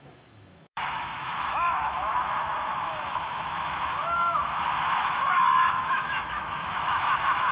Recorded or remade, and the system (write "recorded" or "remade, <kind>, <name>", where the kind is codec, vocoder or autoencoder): remade, autoencoder, DAC-VAE